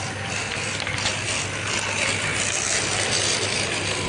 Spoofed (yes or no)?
no